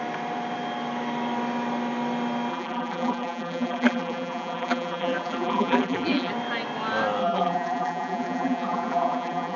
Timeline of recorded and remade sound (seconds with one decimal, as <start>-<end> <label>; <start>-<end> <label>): 0.0-2.5 recorded; 2.5-6.3 remade; 6.3-7.2 recorded; 7.2-9.6 remade